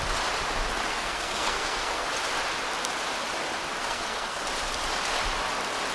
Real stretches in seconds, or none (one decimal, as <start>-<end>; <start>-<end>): 0.0-0.9; 2.1-3.8; 4.4-5.9